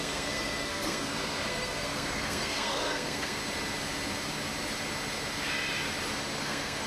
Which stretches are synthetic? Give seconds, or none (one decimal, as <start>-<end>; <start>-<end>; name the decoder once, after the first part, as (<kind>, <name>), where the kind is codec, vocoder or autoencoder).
0.0-3.4 (codec, SNAC); 6.4-6.9